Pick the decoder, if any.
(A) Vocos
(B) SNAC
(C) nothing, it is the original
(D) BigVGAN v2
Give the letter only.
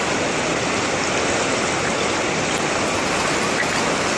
C